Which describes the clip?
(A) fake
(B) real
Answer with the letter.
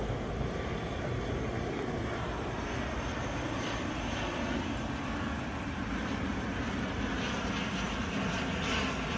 B